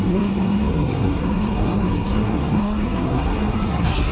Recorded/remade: remade